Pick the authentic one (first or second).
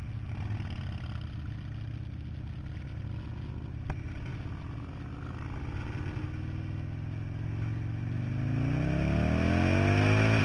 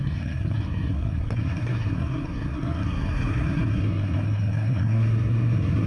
first